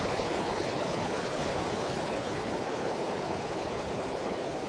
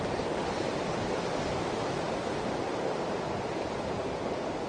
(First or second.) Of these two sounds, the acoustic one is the second